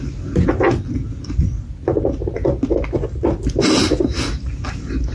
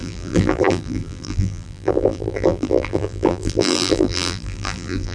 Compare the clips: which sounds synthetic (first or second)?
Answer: second